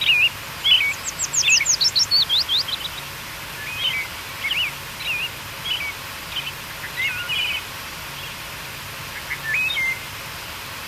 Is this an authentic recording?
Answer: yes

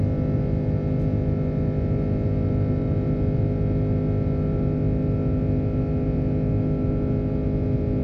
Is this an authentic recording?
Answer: yes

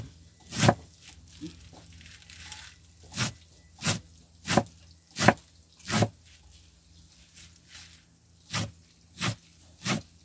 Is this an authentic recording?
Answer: yes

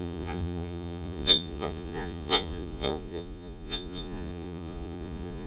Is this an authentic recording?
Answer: no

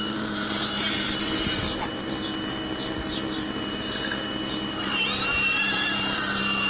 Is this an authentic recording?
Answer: no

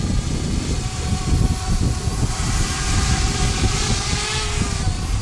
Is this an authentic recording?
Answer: yes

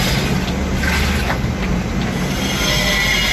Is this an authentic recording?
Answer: yes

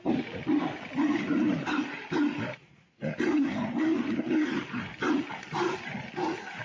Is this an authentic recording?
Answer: yes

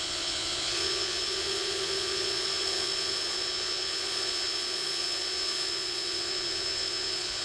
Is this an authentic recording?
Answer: no